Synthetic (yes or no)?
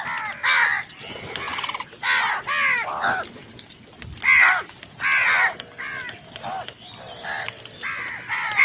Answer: no